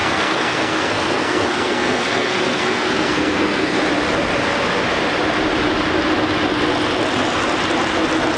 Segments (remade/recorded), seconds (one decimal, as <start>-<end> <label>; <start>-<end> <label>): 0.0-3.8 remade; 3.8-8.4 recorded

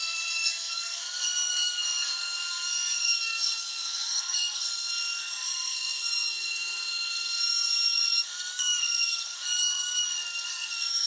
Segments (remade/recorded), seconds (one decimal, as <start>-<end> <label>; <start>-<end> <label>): 0.0-11.1 remade

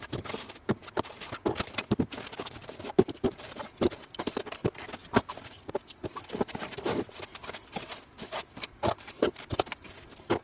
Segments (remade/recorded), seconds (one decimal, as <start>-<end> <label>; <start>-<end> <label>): 0.0-10.4 recorded

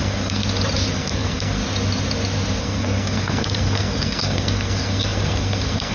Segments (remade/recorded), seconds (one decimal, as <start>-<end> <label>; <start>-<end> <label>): 0.0-0.4 remade; 0.4-0.9 recorded; 0.9-1.6 remade; 1.6-2.6 recorded; 2.6-5.9 remade